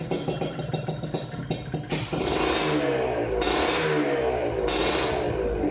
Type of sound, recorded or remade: recorded